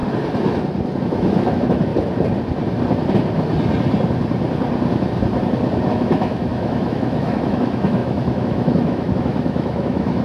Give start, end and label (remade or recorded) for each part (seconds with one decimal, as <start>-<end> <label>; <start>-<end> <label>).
0.0-1.0 recorded; 1.0-1.9 remade; 1.9-5.9 recorded; 5.9-10.2 remade